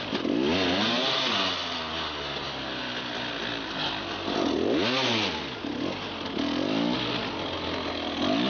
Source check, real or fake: real